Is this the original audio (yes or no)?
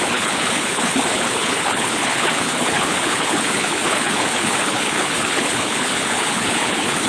no